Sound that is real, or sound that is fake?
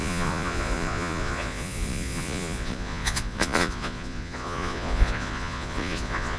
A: fake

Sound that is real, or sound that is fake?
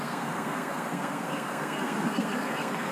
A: fake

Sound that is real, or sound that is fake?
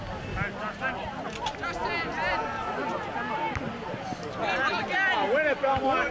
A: real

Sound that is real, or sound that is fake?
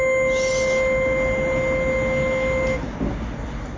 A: real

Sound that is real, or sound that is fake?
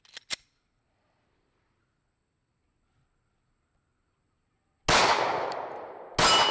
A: real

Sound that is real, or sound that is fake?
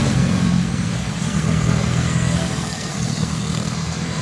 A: fake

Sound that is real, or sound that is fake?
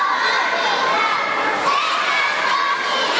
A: real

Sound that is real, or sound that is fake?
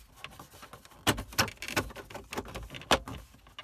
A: real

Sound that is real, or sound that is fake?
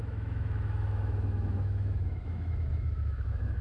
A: fake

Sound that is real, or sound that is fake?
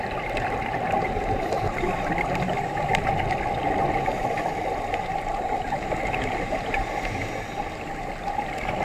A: real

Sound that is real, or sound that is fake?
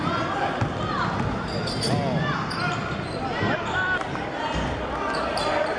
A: real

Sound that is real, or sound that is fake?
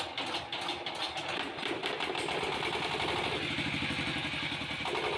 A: real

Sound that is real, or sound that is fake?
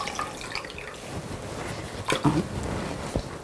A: real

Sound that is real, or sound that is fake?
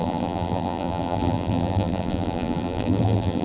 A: fake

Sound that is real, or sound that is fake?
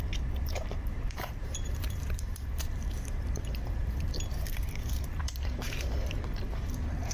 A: fake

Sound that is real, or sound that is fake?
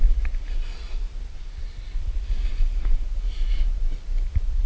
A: real